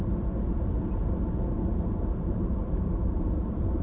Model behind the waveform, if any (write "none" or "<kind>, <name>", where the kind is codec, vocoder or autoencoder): vocoder, BigVGAN v2